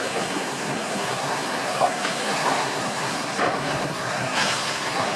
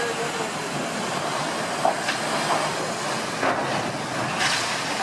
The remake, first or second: first